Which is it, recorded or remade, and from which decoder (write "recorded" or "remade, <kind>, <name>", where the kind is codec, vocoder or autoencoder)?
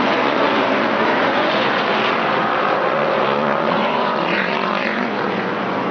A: remade, vocoder, Vocos